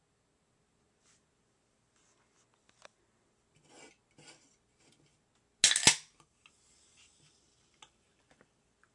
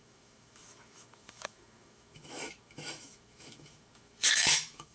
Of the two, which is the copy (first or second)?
second